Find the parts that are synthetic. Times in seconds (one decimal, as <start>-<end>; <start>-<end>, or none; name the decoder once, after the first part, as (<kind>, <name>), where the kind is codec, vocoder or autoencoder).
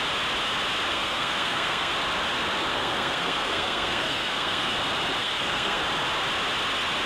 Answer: 0.9-1.9 (codec, SNAC); 2.7-4.7; 5.2-5.8